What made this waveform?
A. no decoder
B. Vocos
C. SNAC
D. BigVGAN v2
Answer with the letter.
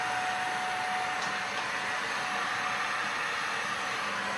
A